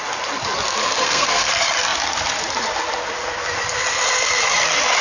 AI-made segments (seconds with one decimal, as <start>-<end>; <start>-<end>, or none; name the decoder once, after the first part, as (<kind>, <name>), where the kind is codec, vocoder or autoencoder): 0.8-1.5 (codec, SNAC)